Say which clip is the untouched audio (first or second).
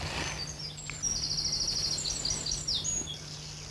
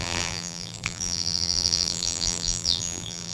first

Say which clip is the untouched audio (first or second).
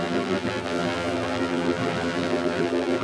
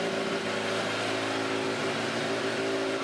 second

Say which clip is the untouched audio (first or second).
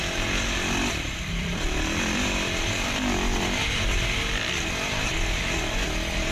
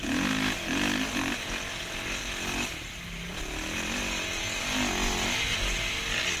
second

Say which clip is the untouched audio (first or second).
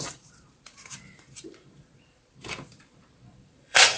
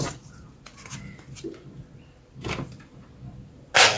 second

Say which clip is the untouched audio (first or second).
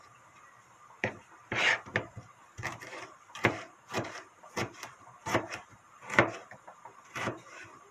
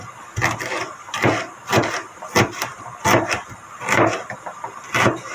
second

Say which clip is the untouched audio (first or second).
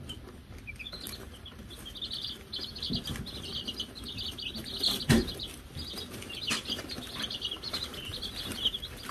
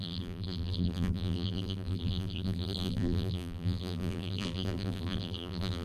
first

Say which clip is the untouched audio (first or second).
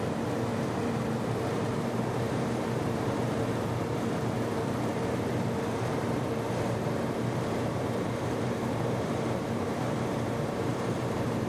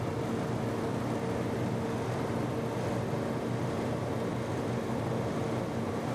second